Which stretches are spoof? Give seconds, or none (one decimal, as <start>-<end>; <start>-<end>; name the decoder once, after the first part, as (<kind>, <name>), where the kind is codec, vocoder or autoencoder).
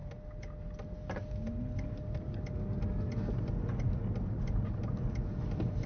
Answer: none